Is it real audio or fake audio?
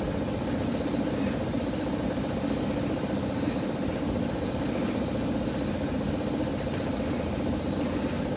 real